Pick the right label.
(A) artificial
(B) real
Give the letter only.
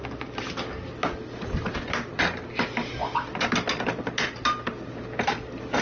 B